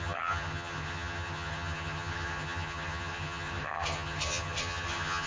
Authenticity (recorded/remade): remade